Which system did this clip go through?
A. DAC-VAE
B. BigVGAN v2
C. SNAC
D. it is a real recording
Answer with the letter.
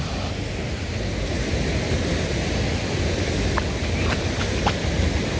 D